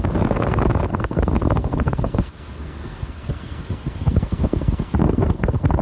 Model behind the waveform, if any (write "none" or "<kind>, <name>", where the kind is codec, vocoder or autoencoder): codec, SNAC